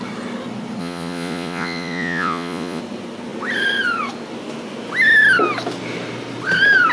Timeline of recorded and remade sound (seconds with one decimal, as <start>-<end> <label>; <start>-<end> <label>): 0.0-0.8 recorded; 0.8-2.8 remade; 2.8-6.9 recorded